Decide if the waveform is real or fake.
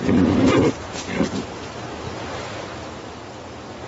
fake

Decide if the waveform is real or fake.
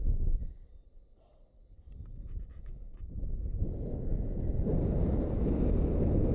real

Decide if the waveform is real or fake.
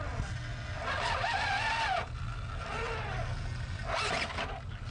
real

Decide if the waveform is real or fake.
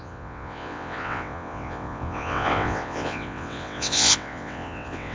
fake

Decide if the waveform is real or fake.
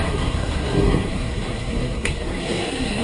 fake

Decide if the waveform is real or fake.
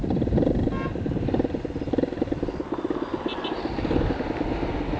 real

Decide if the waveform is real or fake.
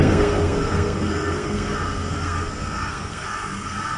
fake